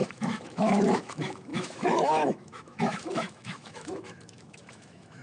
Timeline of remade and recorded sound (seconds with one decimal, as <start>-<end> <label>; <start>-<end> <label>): 0.0-5.2 remade